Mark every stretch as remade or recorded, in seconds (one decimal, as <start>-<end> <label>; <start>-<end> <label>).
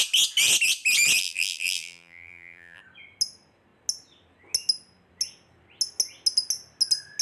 0.0-1.2 recorded; 1.2-2.8 remade; 2.8-7.2 recorded